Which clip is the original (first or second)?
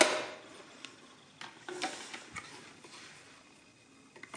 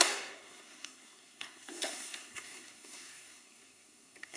first